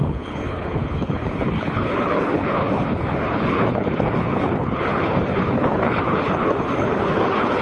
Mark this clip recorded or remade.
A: remade